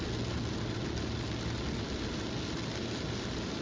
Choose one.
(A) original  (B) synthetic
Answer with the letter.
A